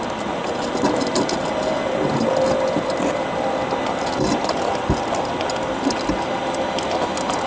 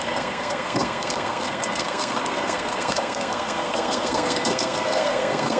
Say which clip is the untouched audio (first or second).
first